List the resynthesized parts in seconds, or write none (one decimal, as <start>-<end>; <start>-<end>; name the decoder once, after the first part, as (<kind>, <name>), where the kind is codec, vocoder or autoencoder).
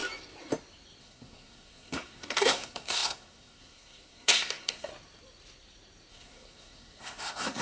1.0-4.9 (codec, SNAC); 6.1-7.6